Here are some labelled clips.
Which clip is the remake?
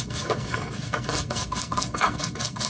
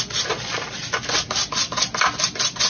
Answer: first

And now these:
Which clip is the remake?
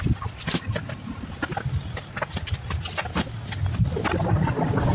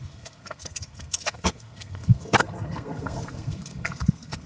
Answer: second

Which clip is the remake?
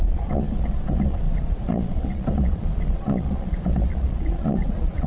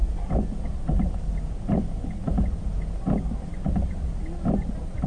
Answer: first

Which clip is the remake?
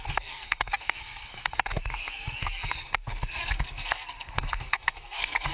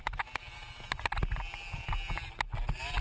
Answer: first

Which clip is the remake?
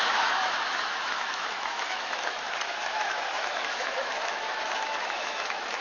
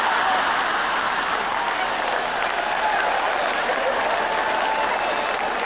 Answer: first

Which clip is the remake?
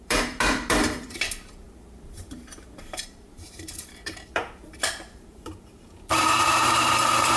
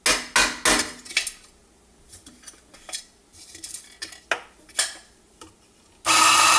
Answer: first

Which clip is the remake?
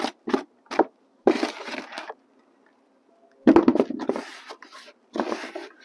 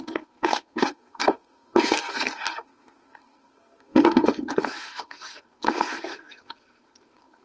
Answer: second